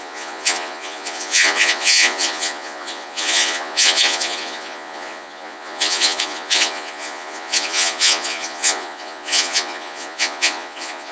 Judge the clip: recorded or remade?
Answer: remade